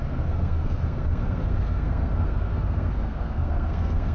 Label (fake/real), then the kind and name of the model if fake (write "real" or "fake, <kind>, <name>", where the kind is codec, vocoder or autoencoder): fake, codec, SNAC